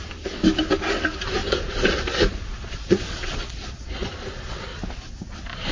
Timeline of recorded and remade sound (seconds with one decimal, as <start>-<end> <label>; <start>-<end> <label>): 0.0-1.4 recorded; 1.4-4.8 remade; 4.8-5.7 recorded